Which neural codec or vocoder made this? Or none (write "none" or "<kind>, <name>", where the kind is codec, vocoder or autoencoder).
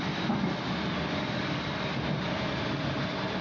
none